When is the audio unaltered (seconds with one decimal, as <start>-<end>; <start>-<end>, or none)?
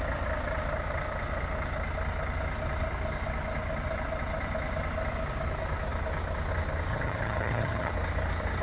0.0-6.9; 7.9-8.6